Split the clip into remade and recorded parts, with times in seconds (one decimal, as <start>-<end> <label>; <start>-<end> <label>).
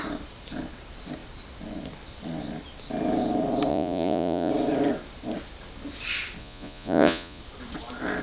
0.0-3.7 recorded; 3.7-4.5 remade; 4.5-6.4 recorded; 6.4-7.4 remade; 7.4-8.2 recorded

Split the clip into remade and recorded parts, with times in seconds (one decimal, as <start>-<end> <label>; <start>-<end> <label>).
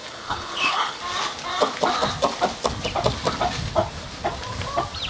0.0-1.0 remade; 1.0-5.1 recorded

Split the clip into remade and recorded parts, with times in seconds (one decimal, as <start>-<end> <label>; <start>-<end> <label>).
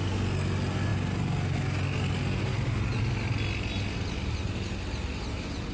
0.0-5.7 recorded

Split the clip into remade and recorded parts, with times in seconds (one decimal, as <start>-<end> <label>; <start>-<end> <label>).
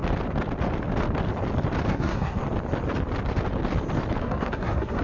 0.0-1.9 recorded; 1.9-2.4 remade; 2.4-4.2 recorded; 4.2-5.0 remade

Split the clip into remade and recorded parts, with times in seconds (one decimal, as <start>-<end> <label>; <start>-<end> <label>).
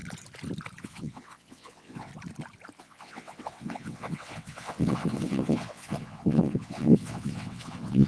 0.0-0.8 recorded; 0.8-2.1 remade; 2.1-2.8 recorded; 2.8-8.1 remade